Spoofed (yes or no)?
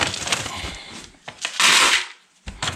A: no